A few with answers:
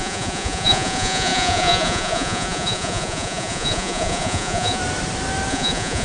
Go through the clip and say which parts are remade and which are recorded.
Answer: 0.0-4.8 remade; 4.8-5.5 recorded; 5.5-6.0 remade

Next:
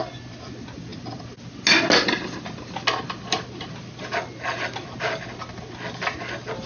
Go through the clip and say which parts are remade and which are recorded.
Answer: 0.0-6.7 recorded

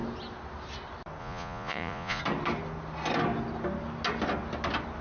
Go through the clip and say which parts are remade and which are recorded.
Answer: 0.0-1.2 recorded; 1.2-2.2 remade; 2.2-5.0 recorded

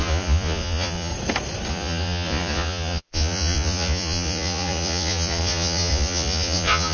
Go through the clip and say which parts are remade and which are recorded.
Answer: 0.0-1.1 remade; 1.1-1.7 recorded; 1.7-6.9 remade

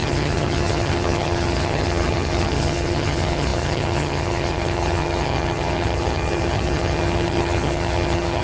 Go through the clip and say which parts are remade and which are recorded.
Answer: 0.0-8.4 remade

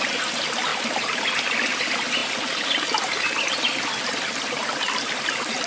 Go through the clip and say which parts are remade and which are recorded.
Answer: 0.0-5.7 recorded

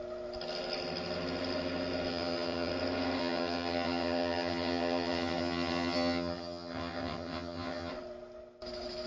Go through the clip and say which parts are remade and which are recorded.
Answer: 0.0-2.1 recorded; 2.1-2.7 remade; 2.7-3.2 recorded; 3.2-7.9 remade; 7.9-9.1 recorded

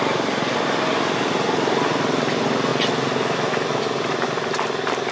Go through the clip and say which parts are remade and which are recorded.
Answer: 0.0-5.1 recorded